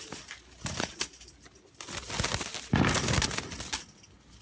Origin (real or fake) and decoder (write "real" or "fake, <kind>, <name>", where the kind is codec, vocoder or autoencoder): real